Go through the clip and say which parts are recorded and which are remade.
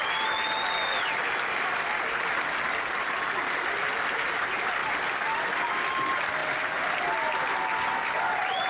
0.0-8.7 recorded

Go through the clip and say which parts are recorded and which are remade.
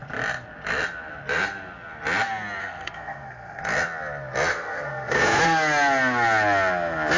0.0-2.6 recorded; 2.6-3.6 remade; 3.6-4.5 recorded; 4.5-5.4 remade; 5.4-7.2 recorded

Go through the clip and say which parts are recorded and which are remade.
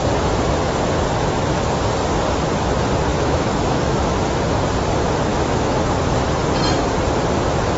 0.0-3.1 recorded; 3.1-4.1 remade; 4.1-5.3 recorded; 5.3-5.8 remade; 5.8-7.8 recorded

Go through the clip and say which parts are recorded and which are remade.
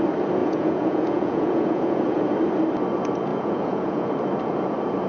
0.0-0.4 recorded; 0.4-2.2 remade; 2.2-3.3 recorded; 3.3-4.1 remade; 4.1-5.1 recorded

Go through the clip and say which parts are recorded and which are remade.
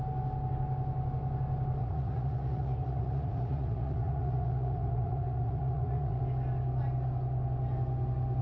0.0-1.8 recorded; 1.8-6.2 remade; 6.2-8.4 recorded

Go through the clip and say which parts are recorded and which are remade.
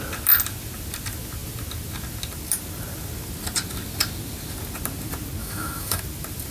0.0-5.4 recorded; 5.4-6.0 remade; 6.0-6.5 recorded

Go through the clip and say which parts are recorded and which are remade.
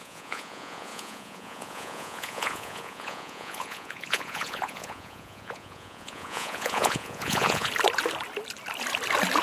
0.0-7.7 remade; 7.7-9.4 recorded